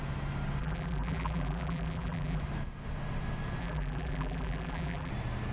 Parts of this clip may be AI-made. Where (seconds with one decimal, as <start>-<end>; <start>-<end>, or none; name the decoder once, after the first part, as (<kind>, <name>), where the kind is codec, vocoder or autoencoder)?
0.6-2.4 (vocoder, BigVGAN v2); 3.6-5.1